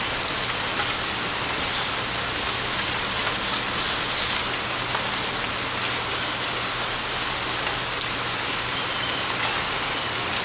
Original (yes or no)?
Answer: yes